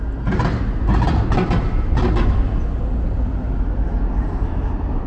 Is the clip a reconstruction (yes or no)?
no